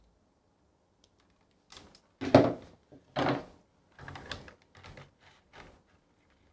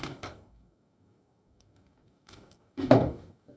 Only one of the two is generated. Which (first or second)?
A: second